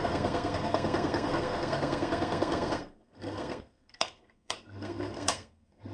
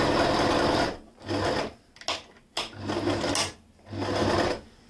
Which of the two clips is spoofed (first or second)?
first